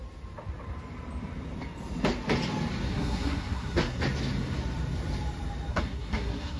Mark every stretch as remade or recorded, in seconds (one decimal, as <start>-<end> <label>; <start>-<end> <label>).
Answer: 0.0-2.9 recorded; 2.9-4.0 remade; 4.0-5.7 recorded; 5.7-6.6 remade